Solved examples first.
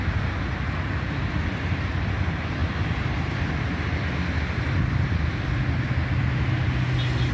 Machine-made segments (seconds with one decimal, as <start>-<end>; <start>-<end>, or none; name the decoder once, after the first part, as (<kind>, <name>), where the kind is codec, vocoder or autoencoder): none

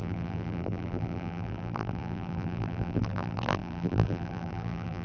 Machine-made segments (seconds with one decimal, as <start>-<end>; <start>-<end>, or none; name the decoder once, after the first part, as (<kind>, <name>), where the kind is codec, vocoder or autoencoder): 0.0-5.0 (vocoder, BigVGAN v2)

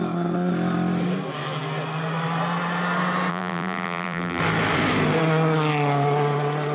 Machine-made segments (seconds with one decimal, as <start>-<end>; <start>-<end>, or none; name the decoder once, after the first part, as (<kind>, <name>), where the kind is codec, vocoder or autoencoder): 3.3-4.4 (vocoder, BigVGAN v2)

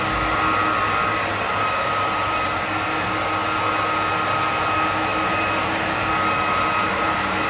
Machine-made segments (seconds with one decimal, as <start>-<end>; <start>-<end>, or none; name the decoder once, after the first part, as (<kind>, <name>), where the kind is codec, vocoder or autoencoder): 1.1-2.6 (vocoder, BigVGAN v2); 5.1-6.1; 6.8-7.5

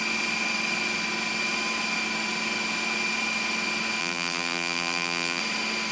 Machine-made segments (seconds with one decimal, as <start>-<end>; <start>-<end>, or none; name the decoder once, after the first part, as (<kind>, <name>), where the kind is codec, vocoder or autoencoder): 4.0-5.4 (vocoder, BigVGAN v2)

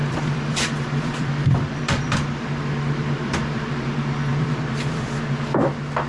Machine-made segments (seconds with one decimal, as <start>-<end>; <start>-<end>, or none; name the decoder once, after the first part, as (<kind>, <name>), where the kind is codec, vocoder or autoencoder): 0.0-3.7 (vocoder, BigVGAN v2); 4.3-5.2

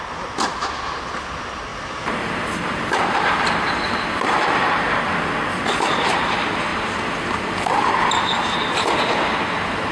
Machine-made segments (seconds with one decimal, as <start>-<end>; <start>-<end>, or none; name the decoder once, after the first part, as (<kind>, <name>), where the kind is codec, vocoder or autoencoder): 1.7-4.5 (vocoder, BigVGAN v2); 6.7-7.9

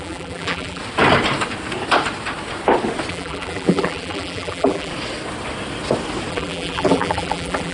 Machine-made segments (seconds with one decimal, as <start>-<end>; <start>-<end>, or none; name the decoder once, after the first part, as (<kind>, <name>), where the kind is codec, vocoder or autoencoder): 0.0-0.8 (vocoder, BigVGAN v2); 3.1-4.9; 6.3-7.7